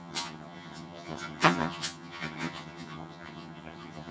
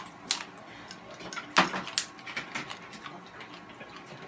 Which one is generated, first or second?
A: first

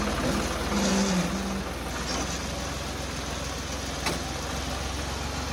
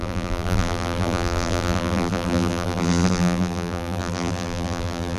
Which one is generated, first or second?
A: second